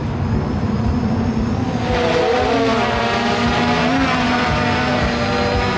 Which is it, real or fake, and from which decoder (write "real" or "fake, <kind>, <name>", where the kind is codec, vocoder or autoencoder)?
real